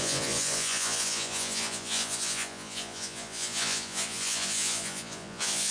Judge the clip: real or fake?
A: fake